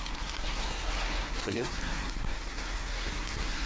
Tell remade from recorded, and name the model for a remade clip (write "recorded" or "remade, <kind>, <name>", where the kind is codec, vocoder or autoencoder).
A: remade, codec, SNAC